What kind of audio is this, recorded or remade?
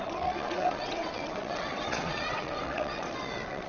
remade